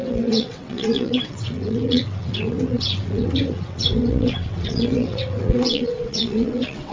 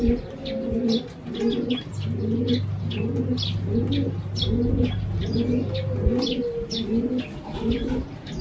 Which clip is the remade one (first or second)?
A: first